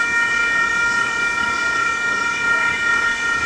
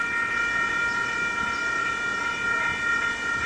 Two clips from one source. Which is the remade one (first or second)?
first